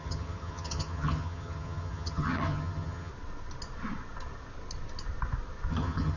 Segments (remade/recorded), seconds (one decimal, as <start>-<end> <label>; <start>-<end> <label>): 0.0-3.1 remade; 3.1-5.7 recorded; 5.7-6.2 remade